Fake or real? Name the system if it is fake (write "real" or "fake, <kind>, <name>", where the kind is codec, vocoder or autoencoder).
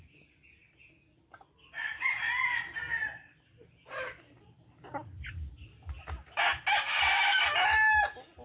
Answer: real